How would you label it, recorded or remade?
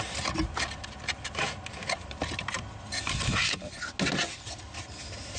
recorded